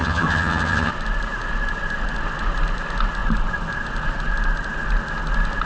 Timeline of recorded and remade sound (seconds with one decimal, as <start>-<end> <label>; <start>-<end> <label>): 0.0-0.9 remade; 0.9-5.7 recorded